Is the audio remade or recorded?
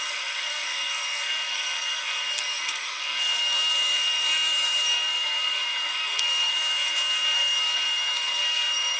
remade